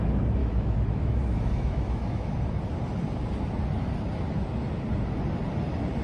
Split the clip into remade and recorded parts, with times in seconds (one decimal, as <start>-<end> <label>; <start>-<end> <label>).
0.0-0.4 recorded; 0.4-2.3 remade; 2.3-6.0 recorded